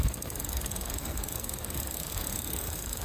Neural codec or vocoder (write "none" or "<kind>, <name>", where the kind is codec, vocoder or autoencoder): codec, SNAC